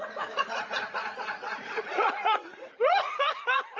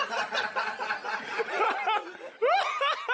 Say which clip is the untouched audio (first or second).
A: second